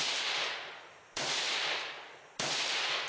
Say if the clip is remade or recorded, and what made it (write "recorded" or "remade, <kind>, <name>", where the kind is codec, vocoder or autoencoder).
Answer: recorded